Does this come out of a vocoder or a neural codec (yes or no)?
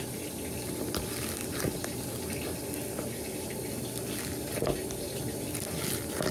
no